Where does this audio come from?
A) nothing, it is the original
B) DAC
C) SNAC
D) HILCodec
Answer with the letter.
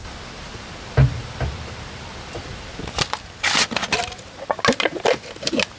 A